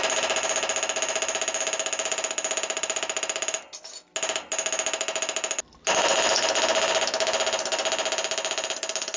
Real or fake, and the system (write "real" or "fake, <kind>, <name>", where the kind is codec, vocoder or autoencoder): real